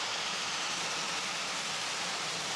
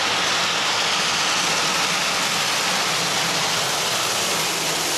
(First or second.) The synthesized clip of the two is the first